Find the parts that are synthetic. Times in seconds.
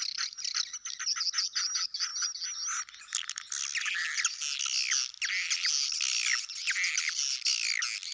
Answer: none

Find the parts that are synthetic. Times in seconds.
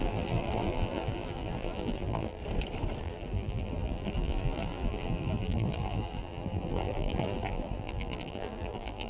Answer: 0.0-2.4 (vocoder, BigVGAN v2); 3.0-9.1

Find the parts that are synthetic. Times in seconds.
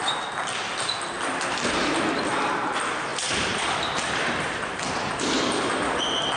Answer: 3.1-4.8 (vocoder, BigVGAN v2)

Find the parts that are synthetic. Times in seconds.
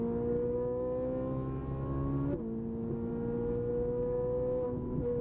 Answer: none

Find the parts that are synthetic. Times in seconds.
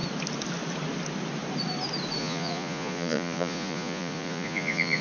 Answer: 2.2-5.0 (vocoder, Vocos)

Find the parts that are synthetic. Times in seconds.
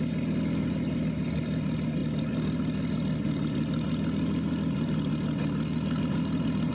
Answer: none